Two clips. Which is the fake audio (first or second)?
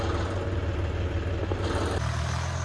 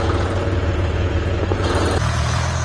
second